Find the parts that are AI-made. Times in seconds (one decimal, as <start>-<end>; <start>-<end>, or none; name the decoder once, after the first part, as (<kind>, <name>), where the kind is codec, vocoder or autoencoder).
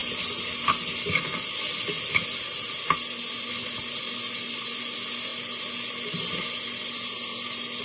none